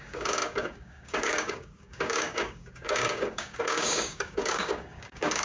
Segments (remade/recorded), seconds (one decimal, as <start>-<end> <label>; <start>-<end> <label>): 0.0-5.4 remade